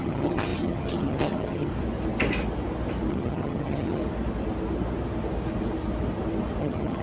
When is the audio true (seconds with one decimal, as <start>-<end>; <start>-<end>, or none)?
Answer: 1.7-3.1; 4.0-6.6